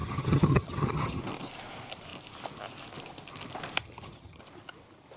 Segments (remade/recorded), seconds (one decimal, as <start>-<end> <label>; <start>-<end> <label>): 0.0-1.2 remade; 1.2-3.8 recorded; 3.8-4.4 remade; 4.4-5.2 recorded